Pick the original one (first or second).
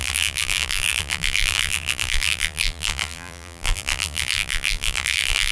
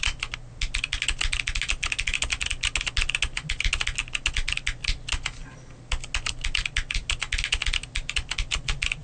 second